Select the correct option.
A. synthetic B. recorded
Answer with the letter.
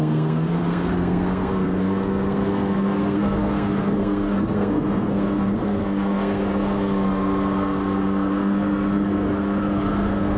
A